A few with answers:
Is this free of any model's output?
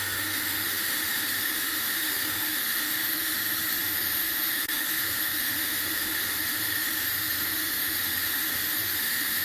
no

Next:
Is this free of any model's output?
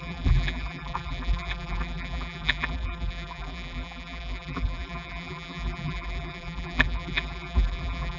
no